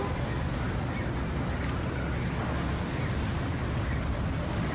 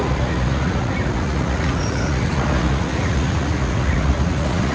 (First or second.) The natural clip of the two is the first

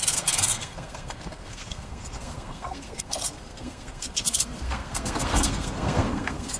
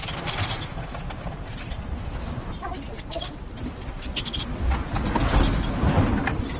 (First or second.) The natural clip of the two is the second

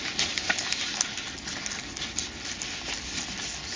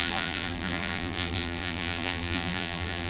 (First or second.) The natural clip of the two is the first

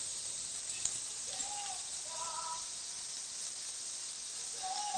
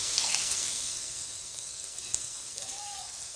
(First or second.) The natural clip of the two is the first